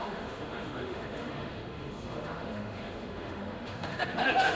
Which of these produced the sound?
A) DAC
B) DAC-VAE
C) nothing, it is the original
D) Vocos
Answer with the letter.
B